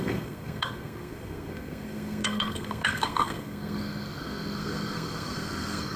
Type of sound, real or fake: fake